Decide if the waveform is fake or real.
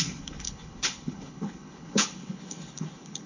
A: fake